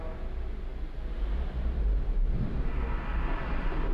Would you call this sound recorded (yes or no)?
yes